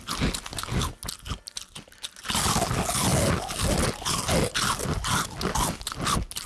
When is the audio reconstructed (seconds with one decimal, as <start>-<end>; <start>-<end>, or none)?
none